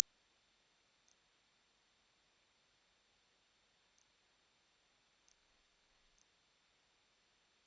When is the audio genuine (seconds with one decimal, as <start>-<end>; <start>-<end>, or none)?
0.0-5.3; 6.2-7.7